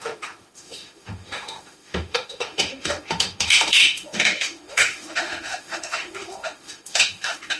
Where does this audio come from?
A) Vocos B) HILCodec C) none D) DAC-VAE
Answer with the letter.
D